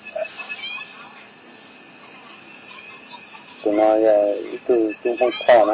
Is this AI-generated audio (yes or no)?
no